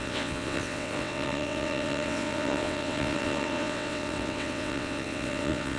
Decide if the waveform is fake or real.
fake